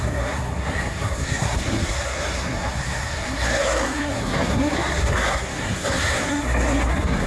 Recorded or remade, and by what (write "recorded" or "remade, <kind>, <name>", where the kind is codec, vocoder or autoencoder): remade, codec, SNAC